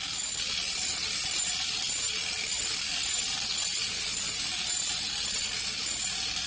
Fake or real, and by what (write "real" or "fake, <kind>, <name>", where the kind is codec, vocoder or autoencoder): real